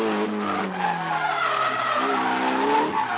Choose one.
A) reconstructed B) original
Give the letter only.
B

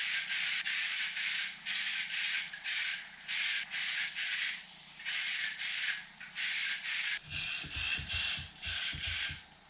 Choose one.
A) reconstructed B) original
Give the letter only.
B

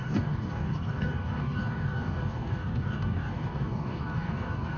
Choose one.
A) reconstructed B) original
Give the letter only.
A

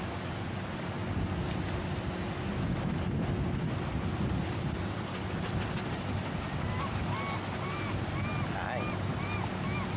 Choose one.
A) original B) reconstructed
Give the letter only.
A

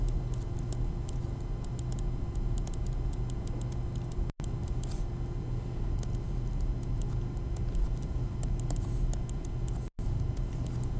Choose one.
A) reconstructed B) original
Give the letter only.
B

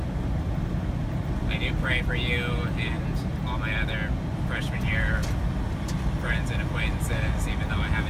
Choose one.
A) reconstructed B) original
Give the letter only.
B